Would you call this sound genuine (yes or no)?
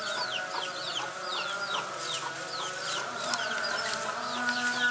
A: yes